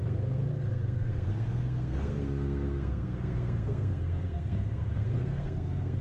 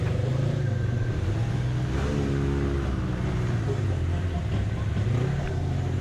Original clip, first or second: second